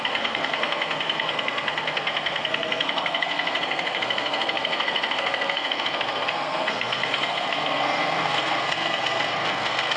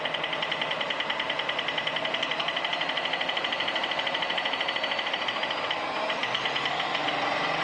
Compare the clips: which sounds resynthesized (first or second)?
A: first